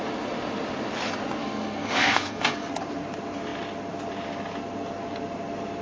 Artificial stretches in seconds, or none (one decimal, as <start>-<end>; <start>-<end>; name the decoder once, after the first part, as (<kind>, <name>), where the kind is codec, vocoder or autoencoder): 1.4-2.7 (codec, SNAC)